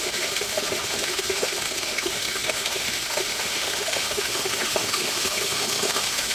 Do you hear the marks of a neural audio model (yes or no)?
yes